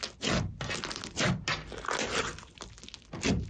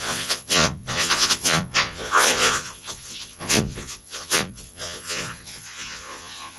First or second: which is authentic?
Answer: first